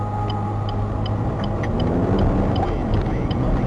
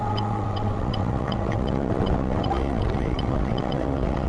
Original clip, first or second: first